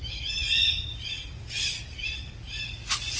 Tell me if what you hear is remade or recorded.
recorded